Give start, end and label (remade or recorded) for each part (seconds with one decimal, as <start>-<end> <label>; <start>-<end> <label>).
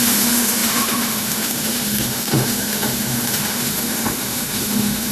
0.0-5.1 remade